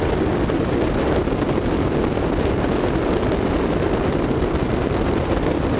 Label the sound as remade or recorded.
recorded